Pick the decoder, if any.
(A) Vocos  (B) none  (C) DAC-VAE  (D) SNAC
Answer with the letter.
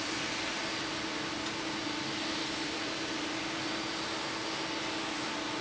B